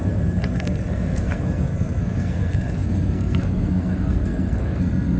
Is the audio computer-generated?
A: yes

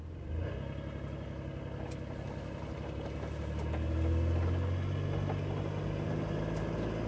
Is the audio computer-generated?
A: no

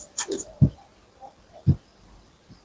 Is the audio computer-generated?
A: no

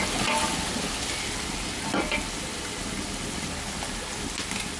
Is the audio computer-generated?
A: no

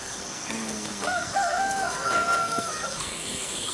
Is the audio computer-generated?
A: yes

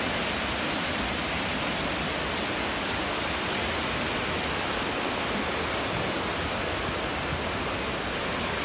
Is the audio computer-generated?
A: no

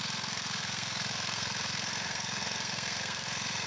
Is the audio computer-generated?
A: yes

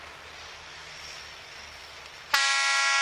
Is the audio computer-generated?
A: no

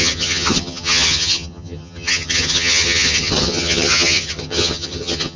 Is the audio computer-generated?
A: yes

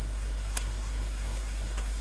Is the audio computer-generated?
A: yes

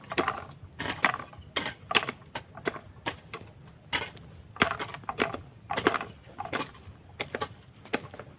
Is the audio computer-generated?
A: no